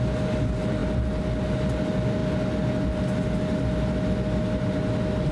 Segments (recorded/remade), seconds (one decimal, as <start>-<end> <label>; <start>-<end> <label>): 0.0-5.3 recorded